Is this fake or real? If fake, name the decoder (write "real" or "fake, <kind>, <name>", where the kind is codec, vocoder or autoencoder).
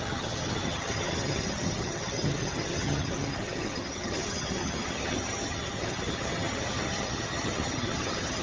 fake, vocoder, HiFi-GAN